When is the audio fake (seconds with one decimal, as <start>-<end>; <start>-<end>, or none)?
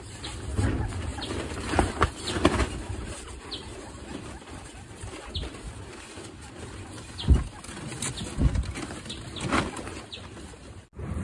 none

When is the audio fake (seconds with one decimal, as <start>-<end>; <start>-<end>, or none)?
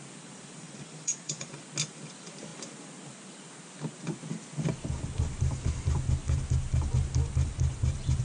0.6-1.6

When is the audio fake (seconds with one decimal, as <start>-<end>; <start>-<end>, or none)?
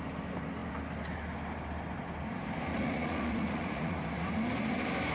2.7-4.0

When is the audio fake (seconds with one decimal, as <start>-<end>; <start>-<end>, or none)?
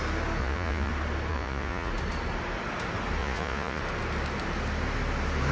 0.4-0.9; 1.3-1.9; 3.2-3.8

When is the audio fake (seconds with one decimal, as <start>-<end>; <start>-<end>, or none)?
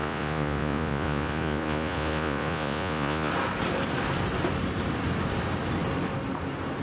0.0-3.3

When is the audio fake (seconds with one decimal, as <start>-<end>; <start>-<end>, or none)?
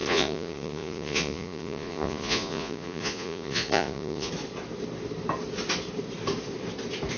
0.0-4.3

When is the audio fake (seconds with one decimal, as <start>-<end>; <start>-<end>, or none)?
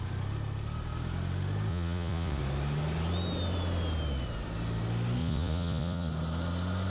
1.7-2.4; 5.2-6.1